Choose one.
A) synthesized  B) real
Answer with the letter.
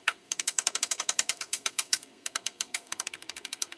A